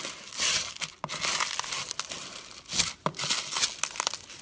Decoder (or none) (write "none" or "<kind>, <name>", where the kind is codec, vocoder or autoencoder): none